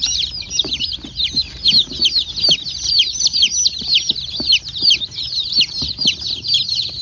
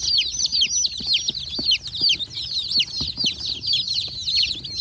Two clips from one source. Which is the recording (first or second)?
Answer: second